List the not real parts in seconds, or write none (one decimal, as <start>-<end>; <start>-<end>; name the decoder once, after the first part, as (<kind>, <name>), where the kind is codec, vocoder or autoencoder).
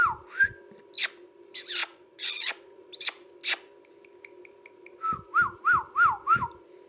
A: 1.8-2.8 (vocoder, Vocos)